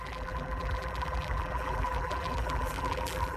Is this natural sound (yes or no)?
no